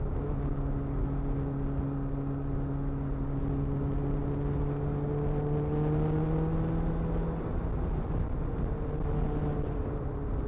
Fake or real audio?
real